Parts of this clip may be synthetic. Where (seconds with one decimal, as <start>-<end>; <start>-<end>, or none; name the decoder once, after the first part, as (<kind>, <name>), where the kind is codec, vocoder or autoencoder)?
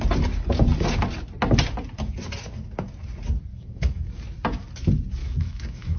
3.5-4.2 (autoencoder, DAC-VAE); 5.2-6.0